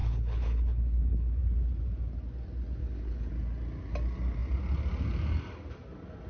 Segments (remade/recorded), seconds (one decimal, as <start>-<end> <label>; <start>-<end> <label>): 0.0-1.4 remade; 1.4-2.8 recorded; 2.8-3.3 remade; 3.3-6.3 recorded